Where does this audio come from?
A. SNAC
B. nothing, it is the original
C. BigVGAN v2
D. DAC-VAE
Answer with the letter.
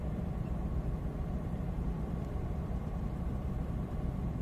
C